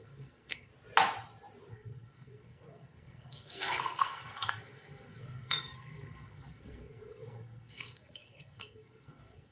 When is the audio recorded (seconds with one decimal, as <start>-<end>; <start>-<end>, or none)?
0.7-1.7